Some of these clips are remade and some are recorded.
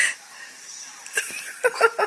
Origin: remade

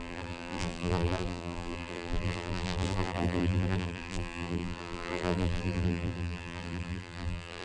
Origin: remade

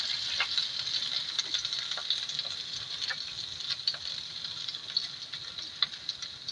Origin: recorded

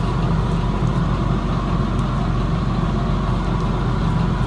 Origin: recorded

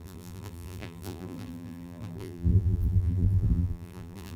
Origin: remade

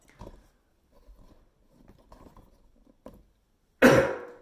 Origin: recorded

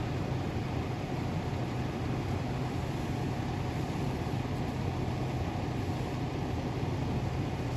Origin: remade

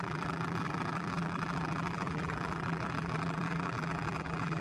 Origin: remade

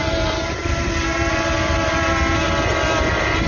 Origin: recorded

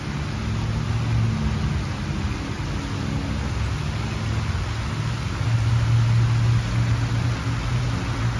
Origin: recorded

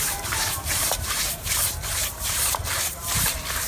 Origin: remade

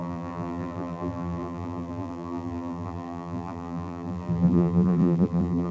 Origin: remade